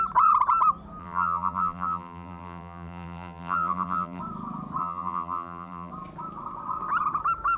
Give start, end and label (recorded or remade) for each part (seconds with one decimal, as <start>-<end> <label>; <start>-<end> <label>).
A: 0.0-1.0 recorded; 1.0-4.2 remade; 4.2-4.8 recorded; 4.8-5.9 remade; 5.9-7.6 recorded